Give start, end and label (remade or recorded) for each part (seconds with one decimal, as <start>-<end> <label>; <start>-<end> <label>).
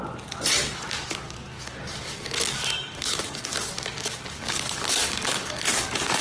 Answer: 0.0-0.9 recorded; 0.9-6.2 remade